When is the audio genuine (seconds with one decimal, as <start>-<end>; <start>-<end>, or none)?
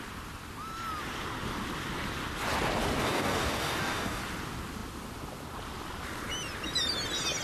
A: 0.0-3.0; 4.2-7.4